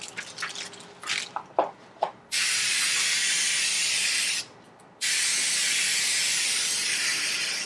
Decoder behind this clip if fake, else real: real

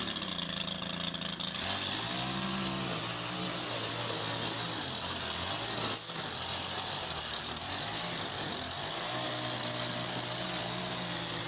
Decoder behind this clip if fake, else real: real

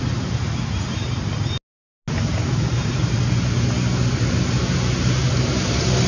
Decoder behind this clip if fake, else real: real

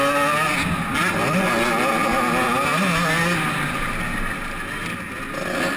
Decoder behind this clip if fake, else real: real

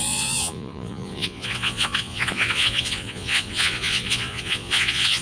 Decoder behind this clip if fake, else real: fake, vocoder, Vocos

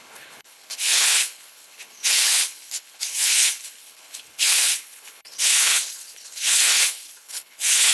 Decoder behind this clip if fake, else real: fake, codec, HILCodec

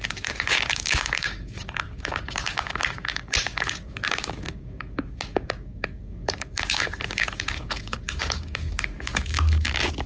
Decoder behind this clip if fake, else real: fake, codec, DAC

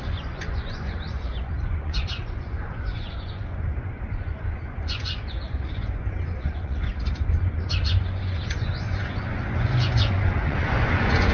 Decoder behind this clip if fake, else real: fake, vocoder, Vocos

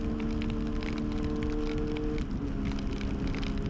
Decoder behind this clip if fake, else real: real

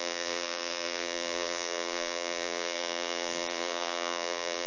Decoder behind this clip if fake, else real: fake, vocoder, BigVGAN v2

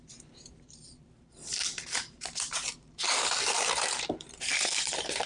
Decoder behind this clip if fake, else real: fake, vocoder, BigVGAN v2